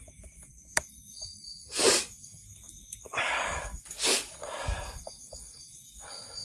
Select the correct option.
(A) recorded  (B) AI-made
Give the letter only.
B